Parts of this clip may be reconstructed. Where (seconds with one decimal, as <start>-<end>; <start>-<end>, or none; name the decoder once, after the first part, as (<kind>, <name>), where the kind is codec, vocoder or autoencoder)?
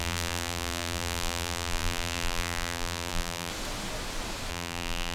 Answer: 0.0-3.5 (vocoder, BigVGAN v2); 4.5-5.1